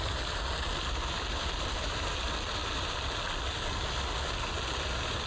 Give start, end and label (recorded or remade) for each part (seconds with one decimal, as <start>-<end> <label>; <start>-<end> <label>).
0.0-5.3 recorded